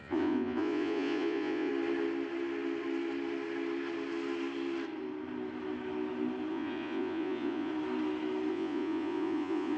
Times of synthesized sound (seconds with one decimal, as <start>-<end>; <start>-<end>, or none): 0.0-1.7; 6.5-7.7; 8.5-9.8